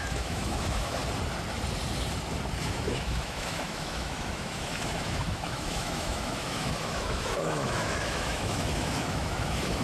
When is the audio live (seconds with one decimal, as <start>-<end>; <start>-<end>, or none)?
1.0-2.6